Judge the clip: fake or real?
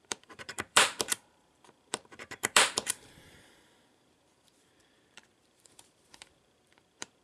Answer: fake